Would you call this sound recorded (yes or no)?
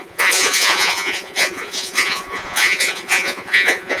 no